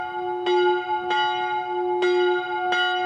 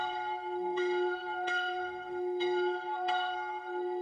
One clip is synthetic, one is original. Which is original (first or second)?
first